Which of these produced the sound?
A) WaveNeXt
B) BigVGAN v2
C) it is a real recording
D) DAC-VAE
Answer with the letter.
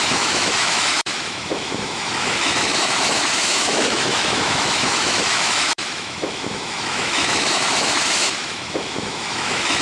D